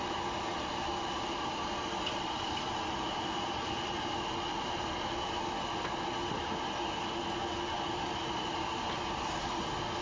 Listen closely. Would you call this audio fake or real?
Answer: real